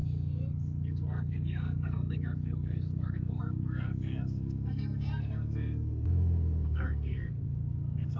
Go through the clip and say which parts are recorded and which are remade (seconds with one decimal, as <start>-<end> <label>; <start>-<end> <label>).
0.0-8.2 remade